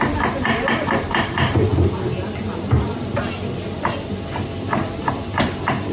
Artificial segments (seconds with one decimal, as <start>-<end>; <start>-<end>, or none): 0.0-1.7; 5.2-5.9